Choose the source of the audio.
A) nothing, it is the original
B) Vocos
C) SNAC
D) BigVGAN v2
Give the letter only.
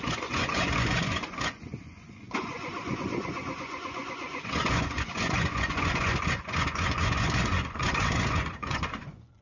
B